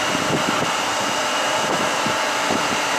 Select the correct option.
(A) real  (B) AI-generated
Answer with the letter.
A